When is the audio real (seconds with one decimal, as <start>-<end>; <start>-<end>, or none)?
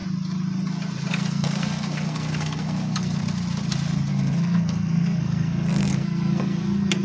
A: 0.0-1.1; 3.2-4.1